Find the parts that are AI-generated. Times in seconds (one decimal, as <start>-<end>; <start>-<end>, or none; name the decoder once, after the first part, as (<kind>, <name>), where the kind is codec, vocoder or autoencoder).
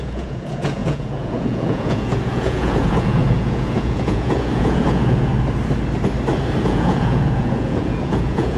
0.0-5.3 (vocoder, Vocos); 6.6-8.6